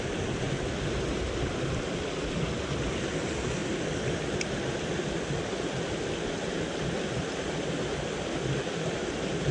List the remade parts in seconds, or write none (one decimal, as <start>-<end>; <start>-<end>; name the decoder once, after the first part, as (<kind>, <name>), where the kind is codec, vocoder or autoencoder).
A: none